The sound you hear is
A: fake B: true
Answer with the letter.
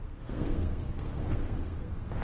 A